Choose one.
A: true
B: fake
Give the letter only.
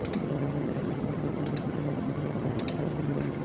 B